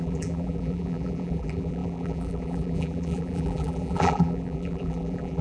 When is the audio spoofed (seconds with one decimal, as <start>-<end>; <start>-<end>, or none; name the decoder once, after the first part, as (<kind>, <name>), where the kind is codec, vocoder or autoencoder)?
0.0-5.4 (vocoder, BigVGAN v2)

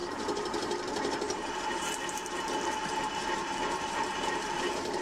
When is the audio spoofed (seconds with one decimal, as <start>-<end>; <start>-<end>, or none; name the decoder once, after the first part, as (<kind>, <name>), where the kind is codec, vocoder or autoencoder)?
0.0-5.0 (vocoder, BigVGAN v2)

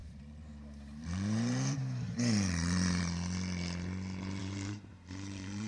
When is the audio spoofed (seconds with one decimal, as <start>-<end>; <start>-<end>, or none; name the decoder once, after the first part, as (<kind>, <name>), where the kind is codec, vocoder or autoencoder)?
0.0-3.0 (vocoder, BigVGAN v2); 4.4-5.7